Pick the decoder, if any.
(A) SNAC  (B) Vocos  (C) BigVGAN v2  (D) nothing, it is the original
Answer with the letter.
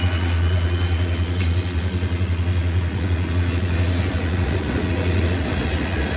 B